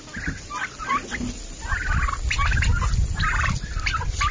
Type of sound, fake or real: real